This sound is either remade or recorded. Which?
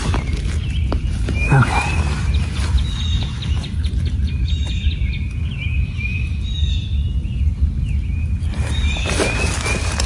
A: recorded